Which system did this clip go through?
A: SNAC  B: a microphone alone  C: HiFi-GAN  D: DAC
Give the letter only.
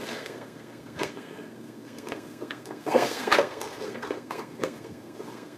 A